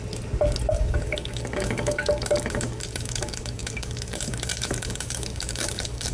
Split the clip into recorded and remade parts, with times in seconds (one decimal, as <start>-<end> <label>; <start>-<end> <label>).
0.0-0.7 recorded; 0.7-6.1 remade